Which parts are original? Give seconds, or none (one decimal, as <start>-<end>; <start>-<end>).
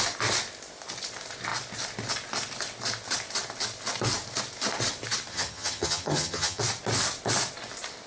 0.0-5.3; 6.6-8.1